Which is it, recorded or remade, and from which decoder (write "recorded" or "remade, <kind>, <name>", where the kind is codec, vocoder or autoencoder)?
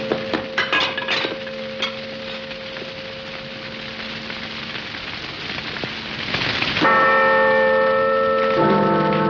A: recorded